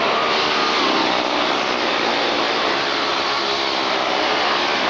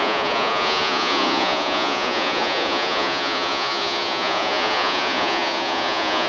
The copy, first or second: second